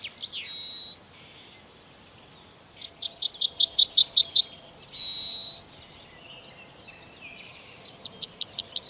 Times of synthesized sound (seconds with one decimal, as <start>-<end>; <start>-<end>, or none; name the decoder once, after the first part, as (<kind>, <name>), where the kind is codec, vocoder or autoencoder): 7.5-8.4 (vocoder, BigVGAN v2)